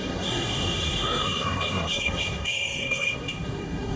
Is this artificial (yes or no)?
yes